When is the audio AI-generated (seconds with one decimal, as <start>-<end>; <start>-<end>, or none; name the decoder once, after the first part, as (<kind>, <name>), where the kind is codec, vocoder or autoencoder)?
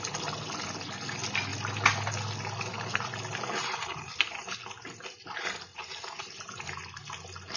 2.7-3.2 (vocoder, BigVGAN v2); 5.7-6.6